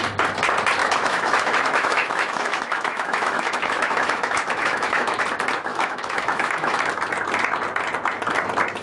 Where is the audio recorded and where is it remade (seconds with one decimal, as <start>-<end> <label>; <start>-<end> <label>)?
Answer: 0.0-0.8 recorded; 0.8-5.2 remade; 5.2-5.7 recorded; 5.7-6.8 remade; 6.8-8.8 recorded